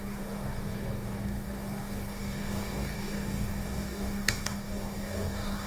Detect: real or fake fake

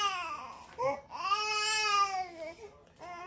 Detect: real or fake real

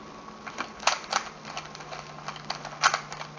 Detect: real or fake real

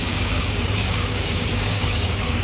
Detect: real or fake fake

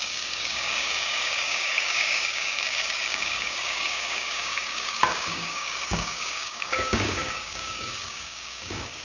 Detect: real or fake fake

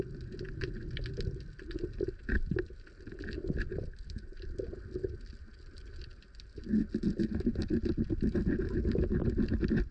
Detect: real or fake real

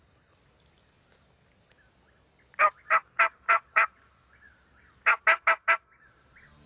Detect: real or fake real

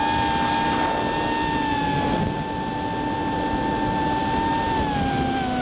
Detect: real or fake real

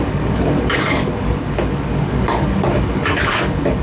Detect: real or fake fake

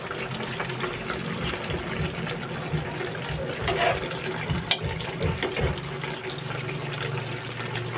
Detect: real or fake real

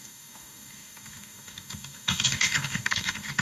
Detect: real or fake fake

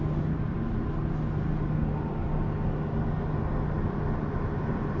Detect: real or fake real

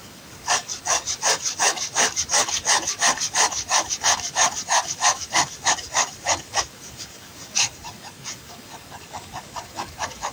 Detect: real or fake fake